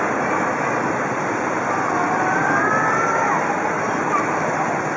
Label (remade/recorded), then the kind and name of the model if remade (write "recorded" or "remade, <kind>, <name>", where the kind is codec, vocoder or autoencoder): recorded